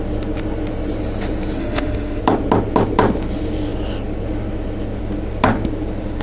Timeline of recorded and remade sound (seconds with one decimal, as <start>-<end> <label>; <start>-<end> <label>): 0.0-1.6 recorded; 1.6-2.2 remade; 2.2-6.2 recorded